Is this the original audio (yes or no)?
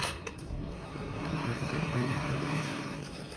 no